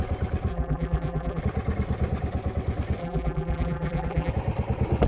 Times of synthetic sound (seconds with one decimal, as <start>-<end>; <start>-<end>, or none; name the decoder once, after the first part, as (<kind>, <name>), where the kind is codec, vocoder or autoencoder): 0.5-1.4 (vocoder, BigVGAN v2); 3.0-4.3